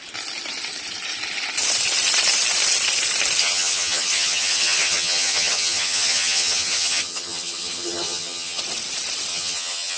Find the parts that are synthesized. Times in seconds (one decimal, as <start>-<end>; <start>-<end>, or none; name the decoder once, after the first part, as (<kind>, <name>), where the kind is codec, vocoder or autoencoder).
3.4-8.6 (vocoder, HiFi-GAN); 9.3-10.0

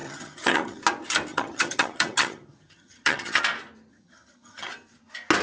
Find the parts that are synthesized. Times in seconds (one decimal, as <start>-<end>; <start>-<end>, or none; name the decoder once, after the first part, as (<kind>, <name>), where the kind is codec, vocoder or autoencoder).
0.0-0.8 (vocoder, HiFi-GAN); 1.3-3.4; 3.9-4.7

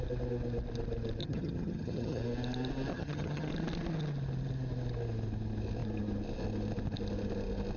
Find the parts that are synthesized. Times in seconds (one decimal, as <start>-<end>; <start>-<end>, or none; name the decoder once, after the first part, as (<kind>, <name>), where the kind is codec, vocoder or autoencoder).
1.2-2.2 (vocoder, HiFi-GAN); 2.9-3.5

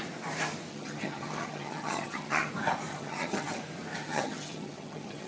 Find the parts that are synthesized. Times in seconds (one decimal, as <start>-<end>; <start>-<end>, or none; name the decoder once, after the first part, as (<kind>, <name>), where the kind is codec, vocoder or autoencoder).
0.7-2.5 (vocoder, HiFi-GAN); 2.9-3.6; 4.0-5.3

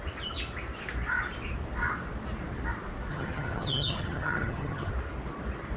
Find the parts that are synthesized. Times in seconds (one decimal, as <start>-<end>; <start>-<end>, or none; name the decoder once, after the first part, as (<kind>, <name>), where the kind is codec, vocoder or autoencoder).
3.1-4.9 (vocoder, HiFi-GAN)

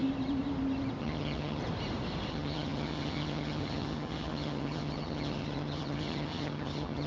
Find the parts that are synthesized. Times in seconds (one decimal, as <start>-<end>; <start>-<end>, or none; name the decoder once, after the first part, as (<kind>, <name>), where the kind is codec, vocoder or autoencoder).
1.0-1.6 (vocoder, HiFi-GAN); 2.3-7.1

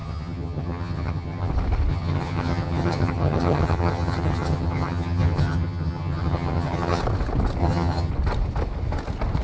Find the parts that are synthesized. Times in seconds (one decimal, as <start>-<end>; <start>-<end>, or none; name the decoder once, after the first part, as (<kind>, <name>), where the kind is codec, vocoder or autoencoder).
0.0-1.5 (vocoder, HiFi-GAN); 1.9-7.0; 7.6-8.1